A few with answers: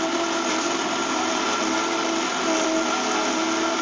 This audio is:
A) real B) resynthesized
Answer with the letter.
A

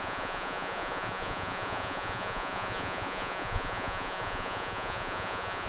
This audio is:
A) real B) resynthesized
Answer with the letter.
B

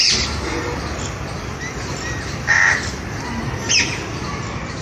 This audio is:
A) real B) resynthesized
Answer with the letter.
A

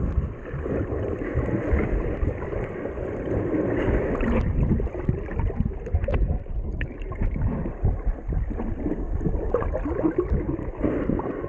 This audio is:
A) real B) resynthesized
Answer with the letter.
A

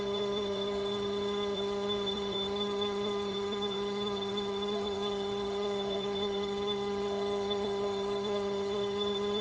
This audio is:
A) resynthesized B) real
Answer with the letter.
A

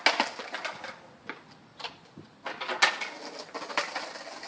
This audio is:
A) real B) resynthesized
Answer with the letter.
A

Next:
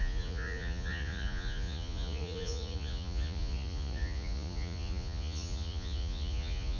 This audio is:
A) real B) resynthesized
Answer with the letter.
B